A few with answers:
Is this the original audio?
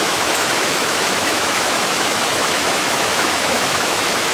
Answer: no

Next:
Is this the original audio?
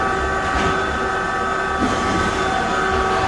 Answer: yes